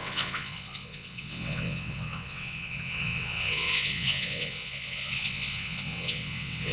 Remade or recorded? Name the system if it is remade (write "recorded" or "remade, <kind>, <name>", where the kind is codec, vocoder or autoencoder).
remade, vocoder, WaveNeXt